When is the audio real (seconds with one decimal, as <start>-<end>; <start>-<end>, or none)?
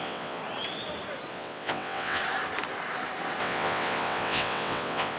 0.4-1.3; 2.2-3.4